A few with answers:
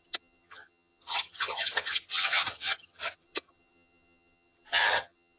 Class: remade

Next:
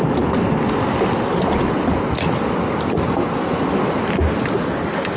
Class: recorded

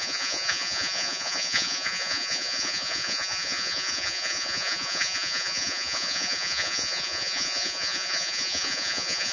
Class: remade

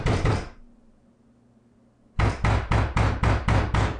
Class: recorded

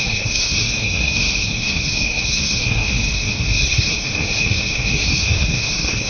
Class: remade